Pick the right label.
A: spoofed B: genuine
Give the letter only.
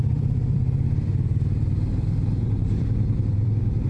A